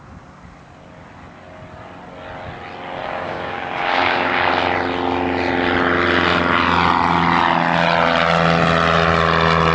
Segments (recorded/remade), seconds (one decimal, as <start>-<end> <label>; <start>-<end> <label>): 0.0-3.0 recorded; 3.0-4.5 remade; 4.5-9.7 recorded